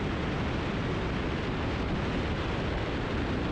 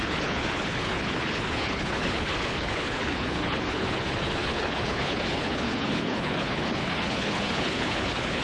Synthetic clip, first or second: second